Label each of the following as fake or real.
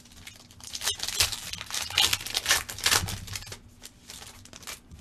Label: real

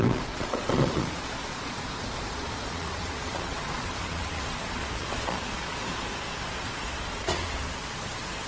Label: fake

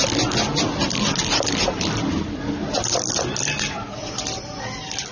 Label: real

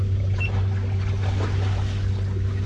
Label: real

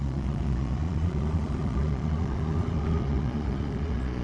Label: fake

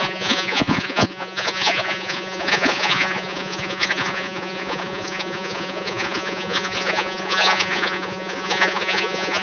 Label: fake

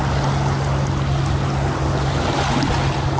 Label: real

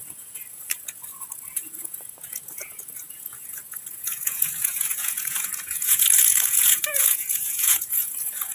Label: fake